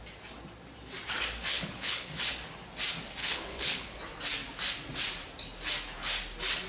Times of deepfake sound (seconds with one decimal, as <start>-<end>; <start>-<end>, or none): 1.5-2.1; 3.2-4.0